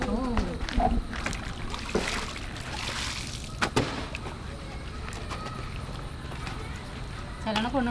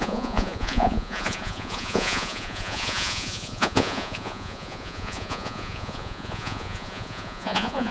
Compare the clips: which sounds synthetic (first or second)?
second